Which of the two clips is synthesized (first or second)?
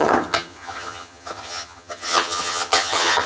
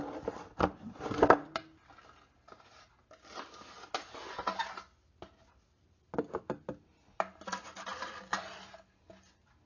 first